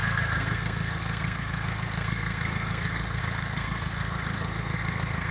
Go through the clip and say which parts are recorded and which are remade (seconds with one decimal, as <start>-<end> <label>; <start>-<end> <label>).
0.0-5.3 remade